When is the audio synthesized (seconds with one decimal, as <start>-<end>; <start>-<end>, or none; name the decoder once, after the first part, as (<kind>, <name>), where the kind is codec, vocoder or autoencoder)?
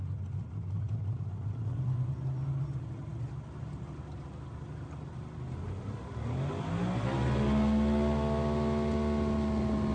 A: none